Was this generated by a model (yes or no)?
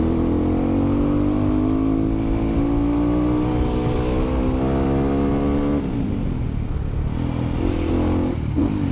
no